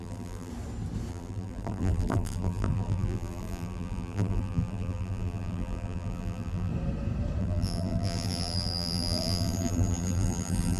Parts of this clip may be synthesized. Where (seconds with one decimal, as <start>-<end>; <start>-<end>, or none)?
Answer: 0.0-0.5; 1.1-6.7; 7.4-10.8